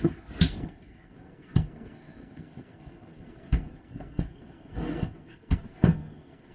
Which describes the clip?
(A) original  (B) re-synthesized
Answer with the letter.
B